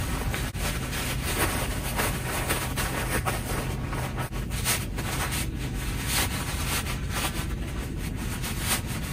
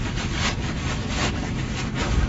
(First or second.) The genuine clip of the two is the first